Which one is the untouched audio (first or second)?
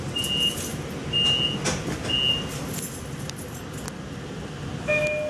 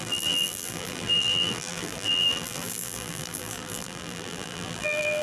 first